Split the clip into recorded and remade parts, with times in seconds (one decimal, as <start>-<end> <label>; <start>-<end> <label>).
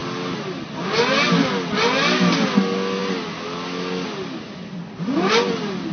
0.0-5.9 recorded